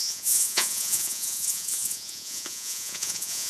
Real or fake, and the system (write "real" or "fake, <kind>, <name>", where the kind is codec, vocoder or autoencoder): fake, vocoder, Vocos